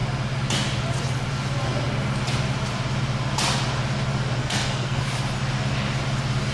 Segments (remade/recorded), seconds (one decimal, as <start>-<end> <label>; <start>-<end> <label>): 0.0-4.4 recorded; 4.4-5.0 remade; 5.0-6.5 recorded